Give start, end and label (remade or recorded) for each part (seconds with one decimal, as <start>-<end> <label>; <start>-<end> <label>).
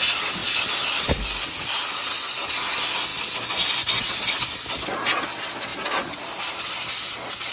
0.0-0.4 recorded; 0.4-1.1 remade; 1.1-5.7 recorded; 5.7-6.6 remade; 6.6-7.5 recorded